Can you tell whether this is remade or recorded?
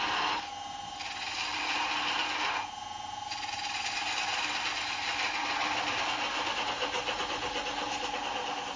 recorded